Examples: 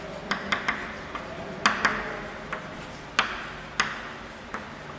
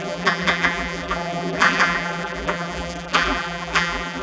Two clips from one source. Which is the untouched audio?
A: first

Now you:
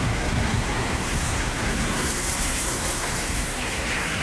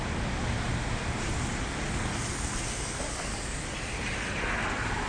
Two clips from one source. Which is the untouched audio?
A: second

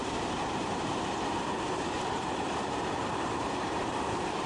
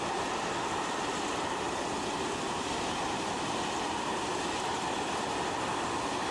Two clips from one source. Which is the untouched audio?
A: second